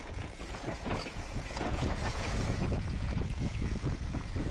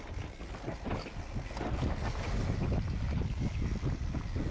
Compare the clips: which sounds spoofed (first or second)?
first